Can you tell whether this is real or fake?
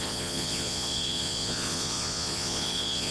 fake